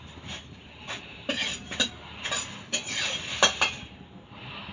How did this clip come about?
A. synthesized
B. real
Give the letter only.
B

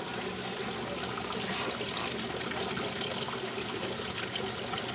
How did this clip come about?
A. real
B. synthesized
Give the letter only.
A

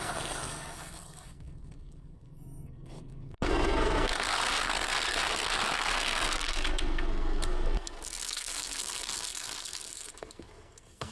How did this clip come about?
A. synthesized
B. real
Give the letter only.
A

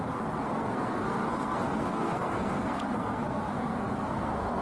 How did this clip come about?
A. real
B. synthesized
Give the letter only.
B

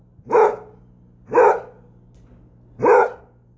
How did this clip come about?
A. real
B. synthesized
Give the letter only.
A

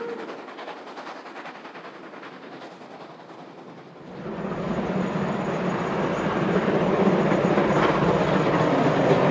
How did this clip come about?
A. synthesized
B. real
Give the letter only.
B